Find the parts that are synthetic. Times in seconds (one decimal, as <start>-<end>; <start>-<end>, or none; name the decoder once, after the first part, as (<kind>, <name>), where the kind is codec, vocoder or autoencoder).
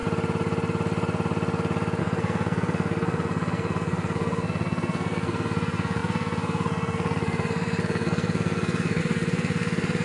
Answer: 2.0-10.0 (codec, SNAC)